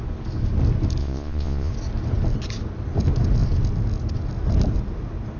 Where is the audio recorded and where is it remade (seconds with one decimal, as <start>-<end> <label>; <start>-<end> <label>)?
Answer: 0.0-1.0 recorded; 1.0-1.7 remade; 1.7-5.4 recorded